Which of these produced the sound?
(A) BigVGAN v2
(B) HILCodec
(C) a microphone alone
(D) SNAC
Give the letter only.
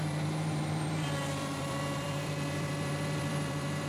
A